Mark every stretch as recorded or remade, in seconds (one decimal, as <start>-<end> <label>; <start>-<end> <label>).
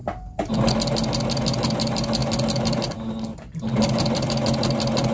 0.0-5.1 recorded